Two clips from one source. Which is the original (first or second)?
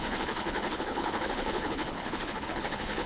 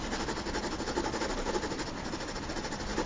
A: second